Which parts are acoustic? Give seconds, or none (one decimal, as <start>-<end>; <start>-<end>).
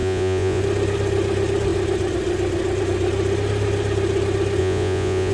0.6-4.6